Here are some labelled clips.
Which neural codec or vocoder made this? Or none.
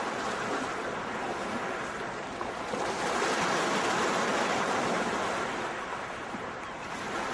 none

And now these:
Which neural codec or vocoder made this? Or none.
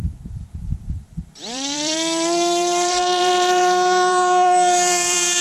vocoder, BigVGAN v2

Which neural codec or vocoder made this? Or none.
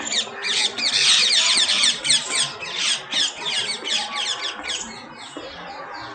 none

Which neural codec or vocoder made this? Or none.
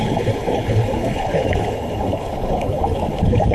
codec, HILCodec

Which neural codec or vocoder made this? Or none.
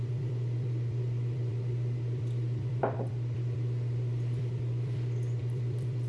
vocoder, BigVGAN v2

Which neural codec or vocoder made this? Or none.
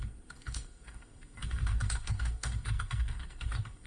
codec, SNAC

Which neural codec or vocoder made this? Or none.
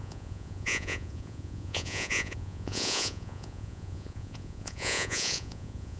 vocoder, Vocos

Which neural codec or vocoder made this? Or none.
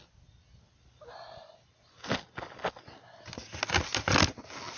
none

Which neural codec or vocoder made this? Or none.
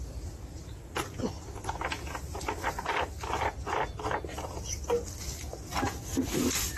none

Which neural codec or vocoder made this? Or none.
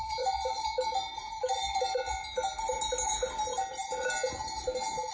none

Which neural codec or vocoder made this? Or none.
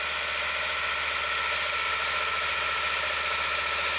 none